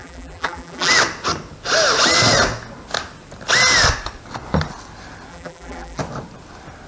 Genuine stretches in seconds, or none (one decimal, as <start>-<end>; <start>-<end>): 0.9-5.3; 6.0-6.9

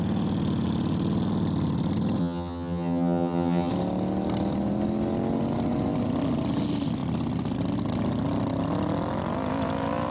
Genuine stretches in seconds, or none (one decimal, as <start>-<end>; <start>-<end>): 0.0-2.2; 3.7-10.1